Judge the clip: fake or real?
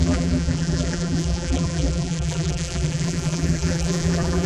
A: fake